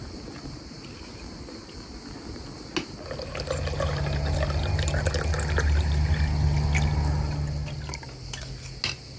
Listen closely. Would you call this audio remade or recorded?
recorded